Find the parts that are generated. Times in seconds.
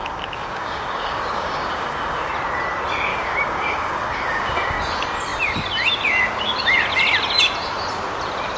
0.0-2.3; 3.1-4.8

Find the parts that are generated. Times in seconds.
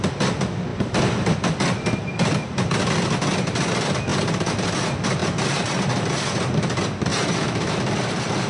4.1-4.7; 5.2-5.7; 7.1-7.7